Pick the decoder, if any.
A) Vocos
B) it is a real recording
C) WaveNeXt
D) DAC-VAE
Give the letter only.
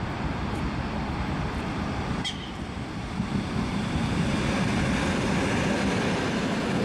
B